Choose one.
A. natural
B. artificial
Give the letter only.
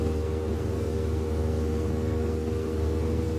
B